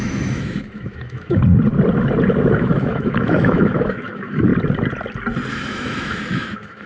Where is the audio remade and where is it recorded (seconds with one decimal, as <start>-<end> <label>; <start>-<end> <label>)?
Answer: 0.0-1.4 remade; 1.4-2.6 recorded; 2.6-4.5 remade; 4.5-5.5 recorded; 5.5-6.9 remade